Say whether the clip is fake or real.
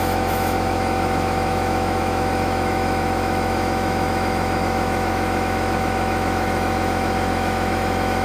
fake